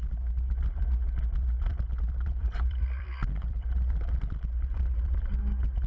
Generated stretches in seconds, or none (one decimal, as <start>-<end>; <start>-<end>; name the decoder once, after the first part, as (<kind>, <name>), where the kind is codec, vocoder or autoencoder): 1.7-5.2 (vocoder, BigVGAN v2)